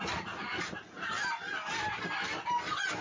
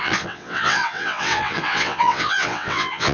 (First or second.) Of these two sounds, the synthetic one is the second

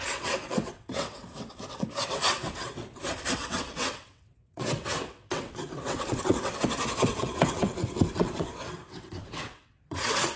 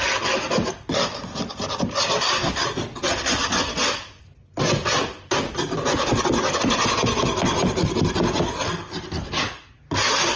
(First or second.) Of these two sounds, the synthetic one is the first